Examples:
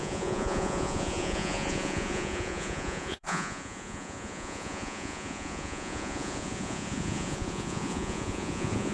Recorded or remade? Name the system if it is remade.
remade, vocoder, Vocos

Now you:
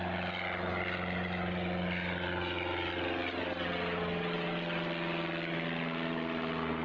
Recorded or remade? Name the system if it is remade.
recorded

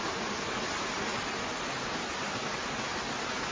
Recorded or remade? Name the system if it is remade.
recorded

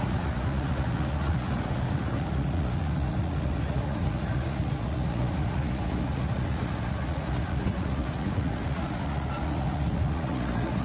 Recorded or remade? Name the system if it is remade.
remade, vocoder, Vocos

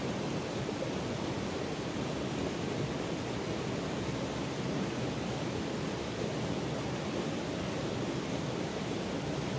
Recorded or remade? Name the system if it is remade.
recorded